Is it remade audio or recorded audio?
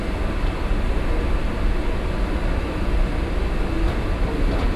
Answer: recorded